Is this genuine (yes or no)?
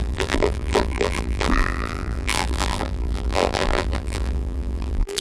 no